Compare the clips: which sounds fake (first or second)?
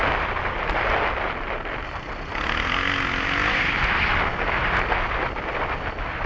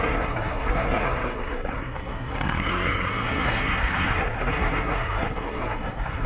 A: second